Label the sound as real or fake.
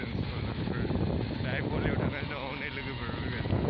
real